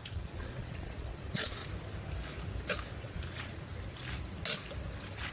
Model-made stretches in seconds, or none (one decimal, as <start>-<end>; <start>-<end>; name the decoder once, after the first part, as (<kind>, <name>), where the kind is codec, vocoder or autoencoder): 0.0-1.6 (vocoder, Vocos); 3.0-3.7

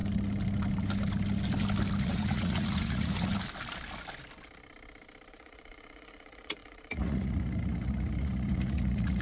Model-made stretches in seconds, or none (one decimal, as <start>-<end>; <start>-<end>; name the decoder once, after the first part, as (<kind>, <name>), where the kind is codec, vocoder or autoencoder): 2.0-3.3 (vocoder, Vocos); 5.3-9.2